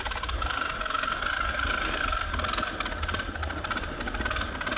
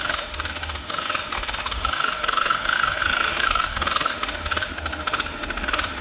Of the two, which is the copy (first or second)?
second